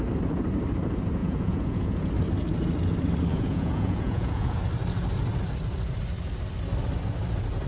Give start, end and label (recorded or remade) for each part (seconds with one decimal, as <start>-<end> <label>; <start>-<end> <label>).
0.0-1.2 recorded; 1.2-2.1 remade; 2.1-3.3 recorded; 3.3-4.6 remade; 4.6-7.7 recorded